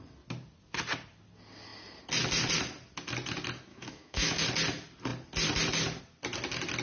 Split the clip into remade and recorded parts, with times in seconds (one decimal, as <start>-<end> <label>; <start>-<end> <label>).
0.0-3.7 recorded; 3.7-4.4 remade; 4.4-6.8 recorded